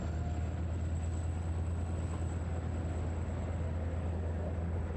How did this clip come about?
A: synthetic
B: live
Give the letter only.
B